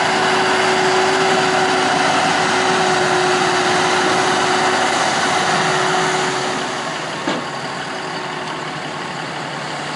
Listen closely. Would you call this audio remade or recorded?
recorded